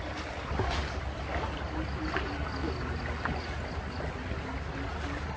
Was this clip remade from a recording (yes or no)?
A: no